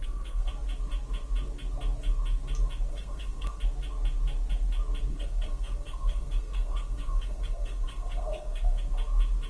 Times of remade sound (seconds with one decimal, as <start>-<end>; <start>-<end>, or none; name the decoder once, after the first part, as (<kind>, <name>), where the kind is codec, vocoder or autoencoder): 0.0-0.5 (codec, SNAC); 2.9-3.6; 5.1-8.8